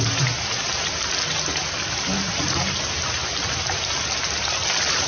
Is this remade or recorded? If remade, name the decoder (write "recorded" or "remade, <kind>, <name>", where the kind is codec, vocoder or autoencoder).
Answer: recorded